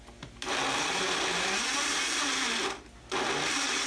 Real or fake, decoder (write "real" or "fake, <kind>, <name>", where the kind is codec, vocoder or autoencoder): real